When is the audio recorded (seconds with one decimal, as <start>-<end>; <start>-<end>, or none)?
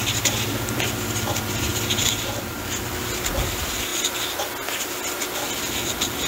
0.0-6.3